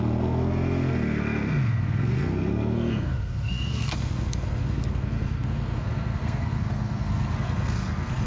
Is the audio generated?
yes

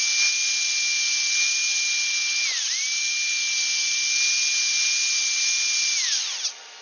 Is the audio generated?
no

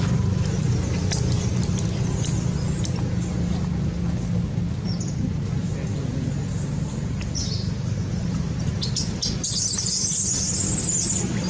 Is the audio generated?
no